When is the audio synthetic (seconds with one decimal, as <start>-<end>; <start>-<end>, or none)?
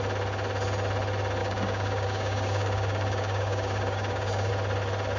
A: 1.4-4.5